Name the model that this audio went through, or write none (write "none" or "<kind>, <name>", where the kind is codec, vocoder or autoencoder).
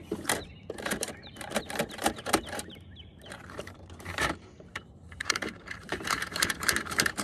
vocoder, BigVGAN v2